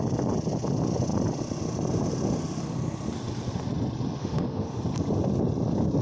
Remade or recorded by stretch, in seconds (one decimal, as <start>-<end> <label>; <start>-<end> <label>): 0.0-4.2 recorded; 4.2-4.8 remade; 4.8-6.0 recorded